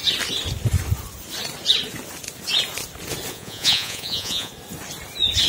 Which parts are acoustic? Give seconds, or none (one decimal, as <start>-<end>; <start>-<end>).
0.0-3.3; 4.5-5.5

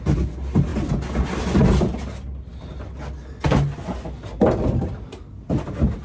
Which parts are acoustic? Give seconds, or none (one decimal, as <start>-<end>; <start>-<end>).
0.0-6.0

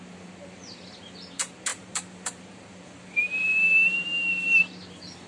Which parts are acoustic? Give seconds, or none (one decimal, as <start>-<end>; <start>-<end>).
0.0-1.7; 4.6-5.3

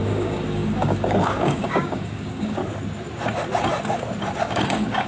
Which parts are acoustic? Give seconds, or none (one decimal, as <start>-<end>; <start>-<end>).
2.6-4.4

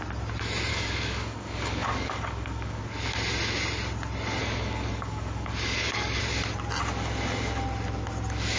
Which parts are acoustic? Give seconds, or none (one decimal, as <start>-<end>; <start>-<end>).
0.0-0.7; 2.8-4.4; 6.2-8.6

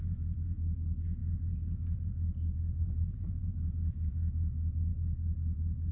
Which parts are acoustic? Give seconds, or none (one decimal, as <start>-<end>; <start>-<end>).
0.0-5.9

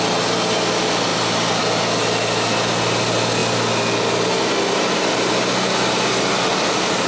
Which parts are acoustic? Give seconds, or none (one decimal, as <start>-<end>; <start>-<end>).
0.0-7.1

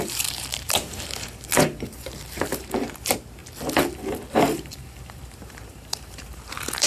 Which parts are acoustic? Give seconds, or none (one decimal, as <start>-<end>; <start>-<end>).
3.4-4.1